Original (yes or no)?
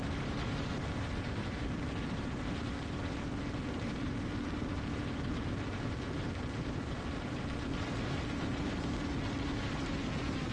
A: no